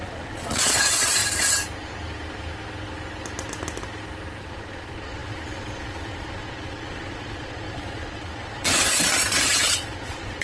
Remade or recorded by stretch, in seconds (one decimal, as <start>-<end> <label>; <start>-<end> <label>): 0.0-1.2 remade; 1.2-4.4 recorded; 4.4-10.4 remade